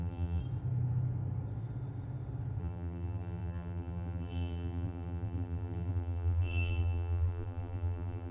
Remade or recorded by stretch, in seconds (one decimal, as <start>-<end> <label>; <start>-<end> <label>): 0.0-0.4 remade; 0.4-2.6 recorded; 2.6-8.3 remade

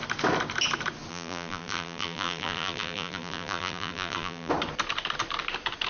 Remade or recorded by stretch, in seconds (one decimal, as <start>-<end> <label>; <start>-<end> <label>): 0.0-1.1 recorded; 1.1-4.5 remade; 4.5-5.9 recorded